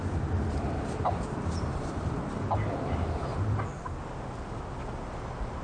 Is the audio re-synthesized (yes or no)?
no